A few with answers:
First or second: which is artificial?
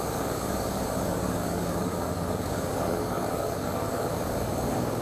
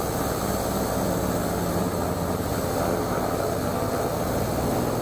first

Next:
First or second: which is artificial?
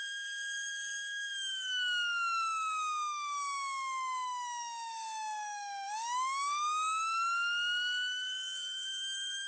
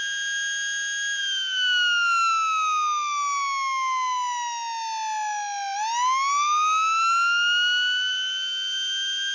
first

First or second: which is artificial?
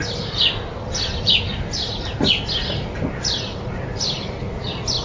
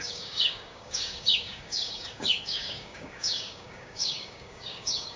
second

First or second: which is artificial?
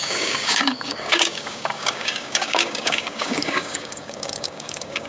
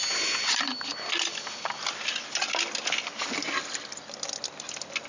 first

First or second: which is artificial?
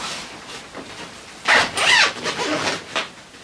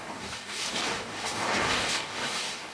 second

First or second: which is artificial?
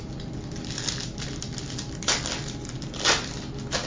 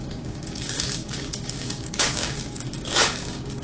second